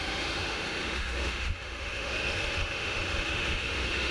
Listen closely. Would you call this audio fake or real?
fake